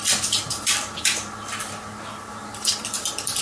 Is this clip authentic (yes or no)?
yes